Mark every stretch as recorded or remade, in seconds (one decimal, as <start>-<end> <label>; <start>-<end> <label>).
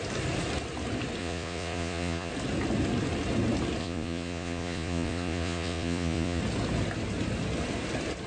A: 0.0-1.2 recorded; 1.2-2.3 remade; 2.3-3.8 recorded; 3.8-6.4 remade; 6.4-8.3 recorded